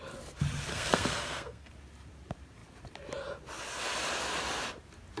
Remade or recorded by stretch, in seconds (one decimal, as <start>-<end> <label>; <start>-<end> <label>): 0.0-0.7 recorded; 0.7-1.7 remade; 1.7-5.2 recorded